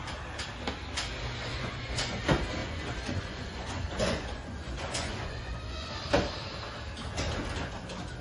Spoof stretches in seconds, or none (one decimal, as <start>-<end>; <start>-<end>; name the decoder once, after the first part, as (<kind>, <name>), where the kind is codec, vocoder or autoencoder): 1.5-2.2 (vocoder, Vocos); 2.6-5.9